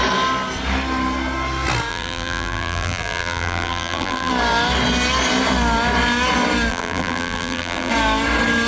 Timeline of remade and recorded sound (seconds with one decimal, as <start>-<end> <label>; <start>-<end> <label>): 0.0-1.9 recorded; 1.9-4.3 remade; 4.3-6.7 recorded; 6.7-7.9 remade; 7.9-8.7 recorded